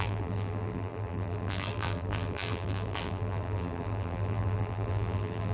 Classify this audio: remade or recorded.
remade